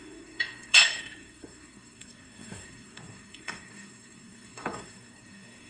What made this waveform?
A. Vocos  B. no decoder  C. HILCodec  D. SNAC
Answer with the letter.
D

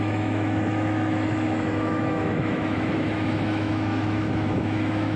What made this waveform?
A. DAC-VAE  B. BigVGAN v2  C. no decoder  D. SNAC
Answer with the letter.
A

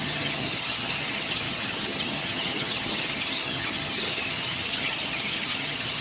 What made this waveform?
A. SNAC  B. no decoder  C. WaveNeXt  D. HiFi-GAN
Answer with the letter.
D